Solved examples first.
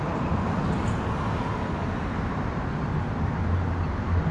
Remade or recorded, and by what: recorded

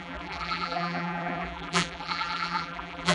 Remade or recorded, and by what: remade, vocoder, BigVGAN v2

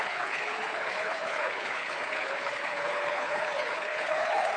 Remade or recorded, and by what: remade, codec, HILCodec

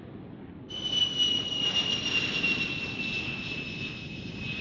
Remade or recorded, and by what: recorded